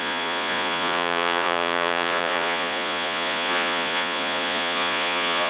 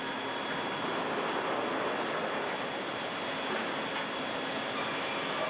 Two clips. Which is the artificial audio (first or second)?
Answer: first